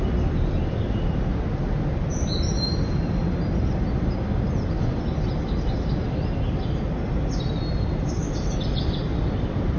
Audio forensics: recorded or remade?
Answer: recorded